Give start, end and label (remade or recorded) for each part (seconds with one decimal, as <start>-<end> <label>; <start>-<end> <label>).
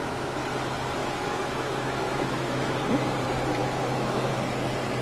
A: 0.0-1.0 recorded; 1.0-2.9 remade; 2.9-3.6 recorded; 3.6-4.3 remade; 4.3-5.0 recorded